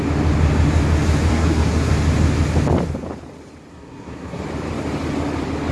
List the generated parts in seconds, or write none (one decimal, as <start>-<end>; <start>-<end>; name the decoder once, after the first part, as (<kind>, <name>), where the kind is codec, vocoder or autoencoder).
1.3-1.9 (codec, SNAC); 3.7-4.4